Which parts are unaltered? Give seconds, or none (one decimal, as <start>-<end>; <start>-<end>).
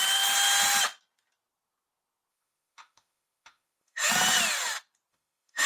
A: 0.0-2.3; 4.1-5.1